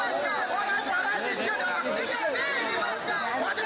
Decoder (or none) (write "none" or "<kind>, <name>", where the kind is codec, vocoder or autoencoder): none